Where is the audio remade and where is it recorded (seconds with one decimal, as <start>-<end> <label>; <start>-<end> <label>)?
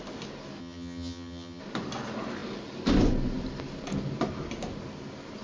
0.0-0.6 recorded; 0.6-1.6 remade; 1.6-5.4 recorded